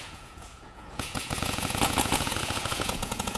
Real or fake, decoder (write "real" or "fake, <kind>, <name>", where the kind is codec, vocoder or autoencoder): fake, vocoder, Vocos